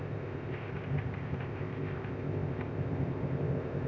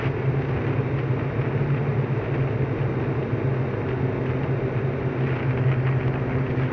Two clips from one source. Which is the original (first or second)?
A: second